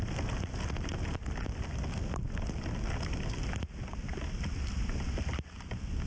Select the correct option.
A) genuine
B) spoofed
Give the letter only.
A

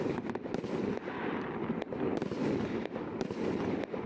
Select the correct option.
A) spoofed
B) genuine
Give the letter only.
B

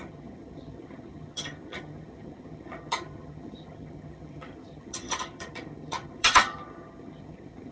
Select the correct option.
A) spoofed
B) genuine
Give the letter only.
A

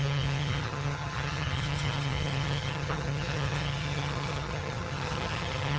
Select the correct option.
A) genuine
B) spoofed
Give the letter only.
B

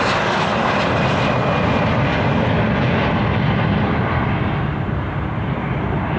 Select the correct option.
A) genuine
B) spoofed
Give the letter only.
A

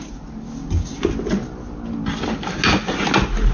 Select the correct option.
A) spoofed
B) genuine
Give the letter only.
B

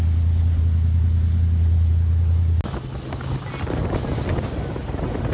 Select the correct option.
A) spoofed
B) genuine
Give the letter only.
B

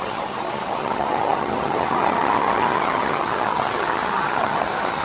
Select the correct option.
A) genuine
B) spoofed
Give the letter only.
B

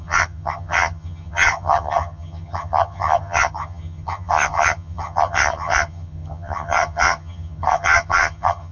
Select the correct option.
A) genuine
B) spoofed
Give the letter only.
B